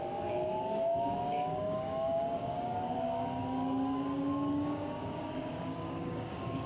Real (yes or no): no